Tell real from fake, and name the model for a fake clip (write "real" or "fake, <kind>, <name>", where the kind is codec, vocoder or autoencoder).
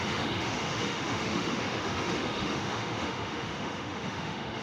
fake, autoencoder, DAC-VAE